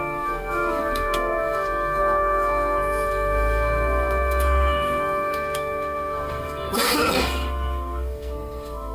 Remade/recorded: remade